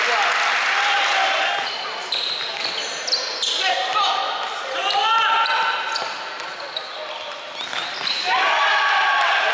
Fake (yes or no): no